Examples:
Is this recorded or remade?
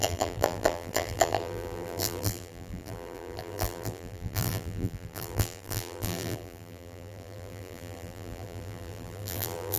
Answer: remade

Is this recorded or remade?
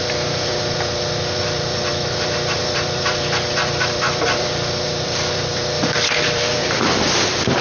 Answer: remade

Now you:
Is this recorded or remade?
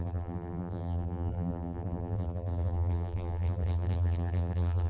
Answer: remade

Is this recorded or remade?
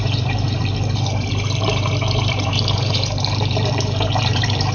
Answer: remade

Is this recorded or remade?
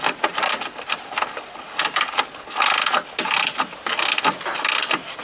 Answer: recorded